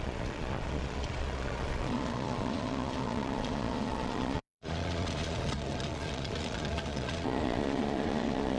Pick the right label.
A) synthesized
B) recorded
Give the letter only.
A